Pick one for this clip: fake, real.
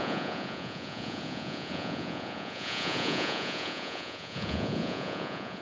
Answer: fake